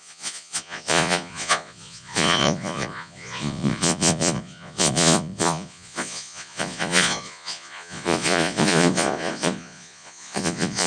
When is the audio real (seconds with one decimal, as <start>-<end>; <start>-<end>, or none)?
none